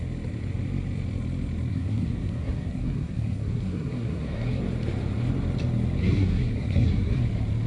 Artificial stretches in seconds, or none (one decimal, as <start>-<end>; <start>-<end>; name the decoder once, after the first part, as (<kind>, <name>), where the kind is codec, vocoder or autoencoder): 1.7-4.6 (codec, SNAC); 6.0-7.2